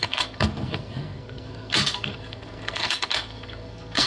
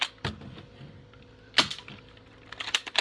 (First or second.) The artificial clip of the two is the first